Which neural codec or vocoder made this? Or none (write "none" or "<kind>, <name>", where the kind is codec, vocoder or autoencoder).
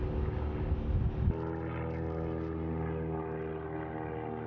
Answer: none